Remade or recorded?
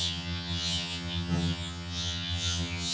remade